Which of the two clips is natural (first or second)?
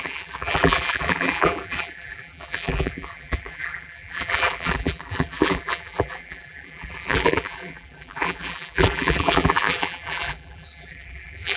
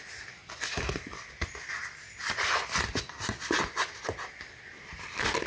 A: second